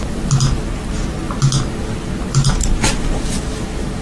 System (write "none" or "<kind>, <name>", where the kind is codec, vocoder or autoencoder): none